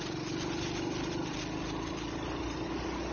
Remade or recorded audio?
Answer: recorded